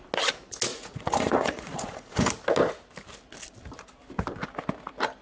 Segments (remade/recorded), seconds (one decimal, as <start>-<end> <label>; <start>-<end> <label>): 0.0-0.7 recorded; 0.7-2.3 remade; 2.3-5.2 recorded